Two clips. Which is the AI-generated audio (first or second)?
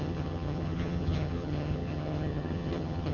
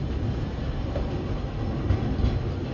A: first